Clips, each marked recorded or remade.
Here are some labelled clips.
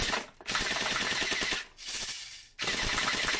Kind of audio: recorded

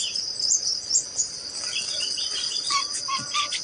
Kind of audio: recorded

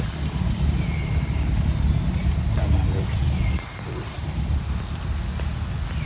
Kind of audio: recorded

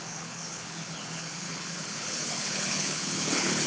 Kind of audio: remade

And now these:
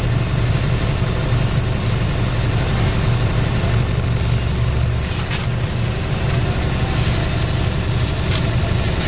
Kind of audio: recorded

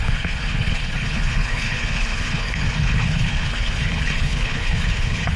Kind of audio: remade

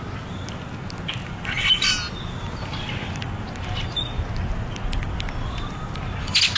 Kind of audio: recorded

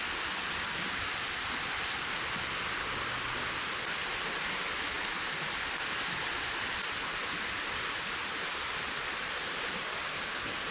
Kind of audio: recorded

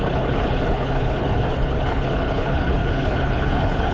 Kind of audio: remade